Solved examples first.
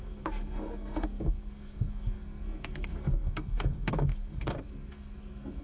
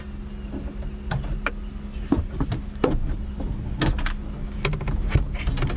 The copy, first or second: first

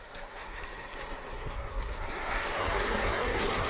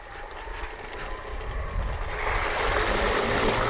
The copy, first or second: first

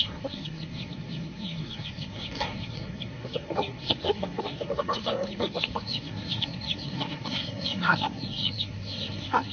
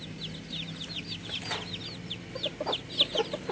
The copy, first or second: first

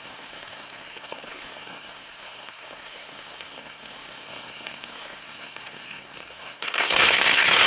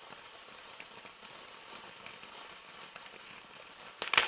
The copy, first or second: first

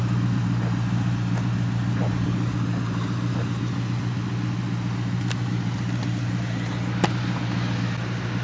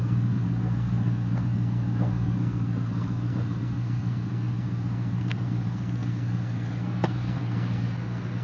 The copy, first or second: second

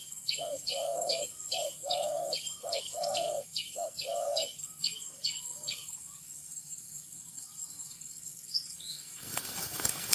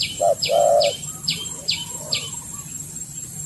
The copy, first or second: first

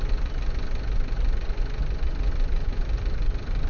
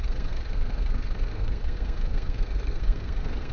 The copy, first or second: second